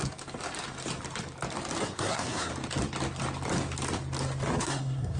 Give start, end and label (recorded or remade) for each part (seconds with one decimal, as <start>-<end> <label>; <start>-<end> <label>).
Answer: 0.0-1.8 recorded; 1.8-2.5 remade; 2.5-4.6 recorded; 4.6-5.2 remade